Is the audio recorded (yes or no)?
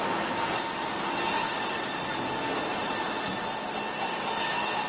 yes